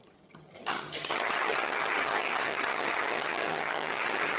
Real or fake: fake